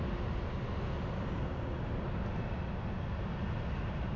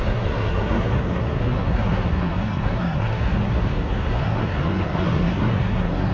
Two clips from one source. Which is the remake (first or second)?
second